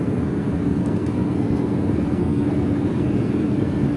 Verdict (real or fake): fake